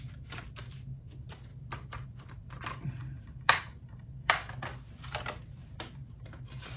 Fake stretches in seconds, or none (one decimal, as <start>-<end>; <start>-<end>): 0.0-1.5; 2.1-4.4; 4.9-6.8